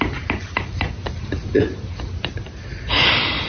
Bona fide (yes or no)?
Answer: yes